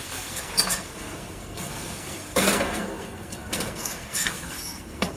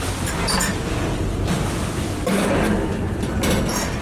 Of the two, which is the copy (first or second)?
first